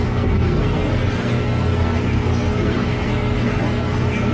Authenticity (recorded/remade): remade